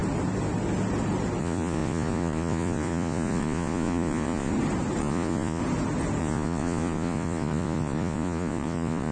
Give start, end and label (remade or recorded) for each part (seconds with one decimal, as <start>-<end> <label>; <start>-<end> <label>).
0.0-1.4 recorded; 1.4-4.5 remade; 4.5-5.0 recorded; 5.0-5.6 remade; 5.6-6.2 recorded; 6.2-9.1 remade